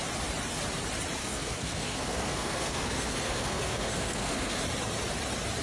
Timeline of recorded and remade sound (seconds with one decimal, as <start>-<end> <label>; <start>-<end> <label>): 0.0-1.2 recorded; 1.2-4.6 remade; 4.6-5.6 recorded